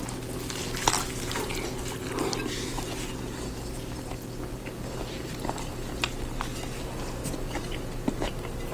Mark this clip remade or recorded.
recorded